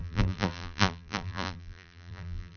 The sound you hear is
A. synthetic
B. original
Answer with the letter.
A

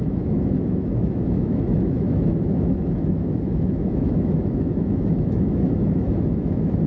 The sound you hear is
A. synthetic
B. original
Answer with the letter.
A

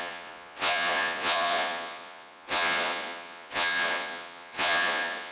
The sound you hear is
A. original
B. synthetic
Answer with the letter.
B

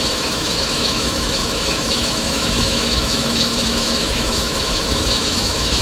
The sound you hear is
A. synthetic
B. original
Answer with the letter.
A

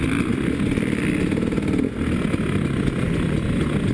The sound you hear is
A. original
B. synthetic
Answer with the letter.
A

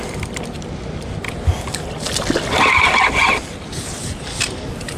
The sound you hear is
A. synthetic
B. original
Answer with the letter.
B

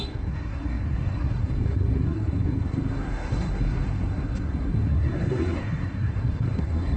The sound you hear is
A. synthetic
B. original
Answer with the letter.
A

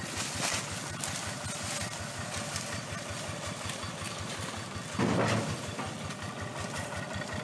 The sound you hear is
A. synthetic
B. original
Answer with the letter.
B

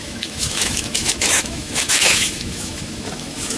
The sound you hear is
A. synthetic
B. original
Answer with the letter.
A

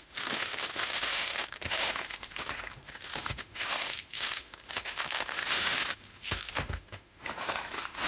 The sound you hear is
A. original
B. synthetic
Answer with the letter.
B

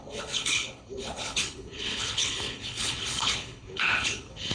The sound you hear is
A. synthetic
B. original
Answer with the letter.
A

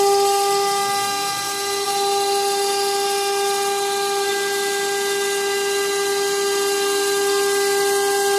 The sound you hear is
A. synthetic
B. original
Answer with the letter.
B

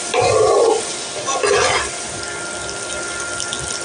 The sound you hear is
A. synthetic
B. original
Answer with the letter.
B